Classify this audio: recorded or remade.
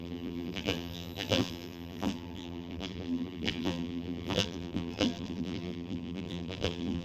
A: remade